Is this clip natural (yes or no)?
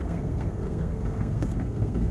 no